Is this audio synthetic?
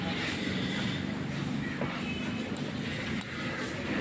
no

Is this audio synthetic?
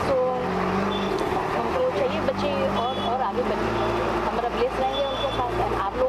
no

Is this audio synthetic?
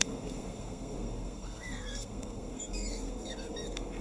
yes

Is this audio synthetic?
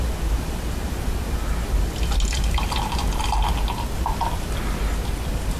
no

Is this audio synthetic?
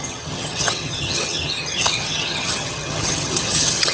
yes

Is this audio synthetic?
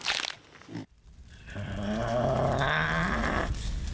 no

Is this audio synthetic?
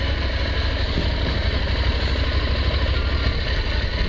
no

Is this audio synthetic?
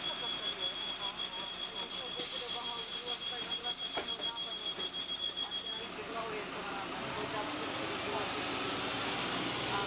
no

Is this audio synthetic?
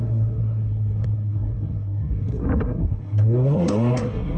yes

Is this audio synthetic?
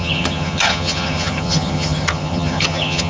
yes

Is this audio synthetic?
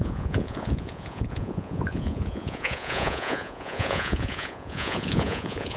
yes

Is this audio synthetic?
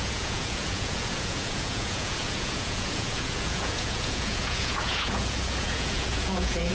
yes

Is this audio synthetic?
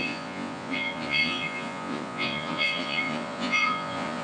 yes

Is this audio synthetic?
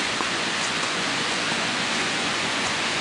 yes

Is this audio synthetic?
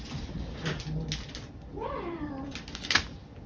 no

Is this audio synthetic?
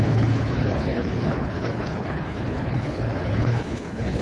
yes